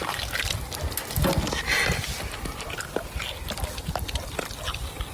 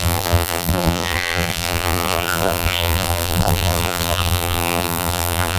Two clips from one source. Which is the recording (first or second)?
first